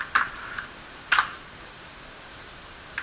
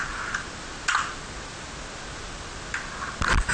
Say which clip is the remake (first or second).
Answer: first